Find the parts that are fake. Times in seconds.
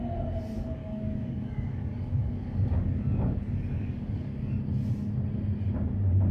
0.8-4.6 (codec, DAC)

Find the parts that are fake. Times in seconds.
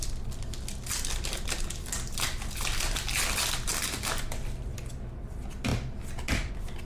none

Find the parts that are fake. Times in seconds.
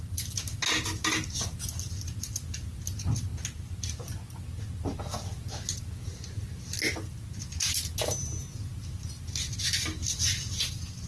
none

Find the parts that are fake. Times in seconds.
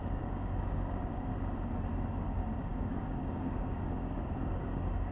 0.0-1.3 (codec, DAC); 2.2-5.1